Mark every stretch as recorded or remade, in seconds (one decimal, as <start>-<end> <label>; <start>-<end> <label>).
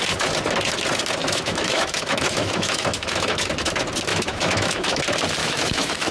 0.0-1.2 recorded; 1.2-3.5 remade; 3.5-4.1 recorded; 4.1-5.0 remade; 5.0-5.4 recorded; 5.4-6.1 remade